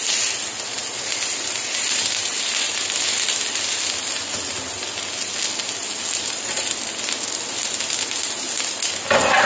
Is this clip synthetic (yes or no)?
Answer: no